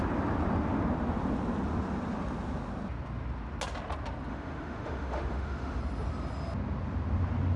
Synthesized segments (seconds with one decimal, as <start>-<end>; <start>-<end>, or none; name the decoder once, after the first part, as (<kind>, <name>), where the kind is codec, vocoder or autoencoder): 4.3-5.8 (autoencoder, DAC-VAE)